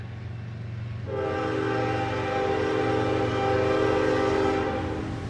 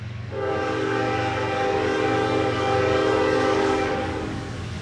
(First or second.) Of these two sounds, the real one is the first